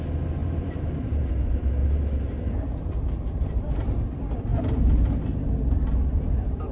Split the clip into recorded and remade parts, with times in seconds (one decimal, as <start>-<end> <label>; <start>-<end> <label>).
0.0-0.4 recorded; 0.4-1.3 remade; 1.3-1.8 recorded; 1.8-3.7 remade; 3.7-6.7 recorded